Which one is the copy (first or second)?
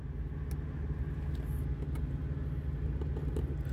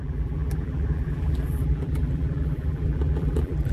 second